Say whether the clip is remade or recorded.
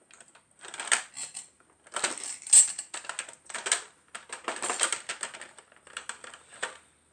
recorded